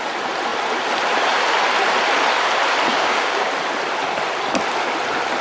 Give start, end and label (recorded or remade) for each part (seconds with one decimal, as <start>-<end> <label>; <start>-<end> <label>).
0.0-2.9 recorded; 2.9-3.5 remade; 3.5-5.4 recorded